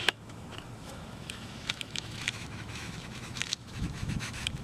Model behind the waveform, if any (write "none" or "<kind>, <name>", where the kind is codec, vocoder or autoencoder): autoencoder, DAC-VAE